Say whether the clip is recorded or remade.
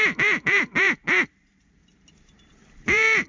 remade